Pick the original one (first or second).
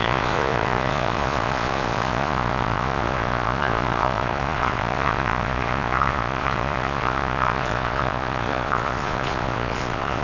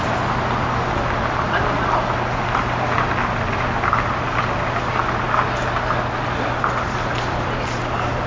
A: second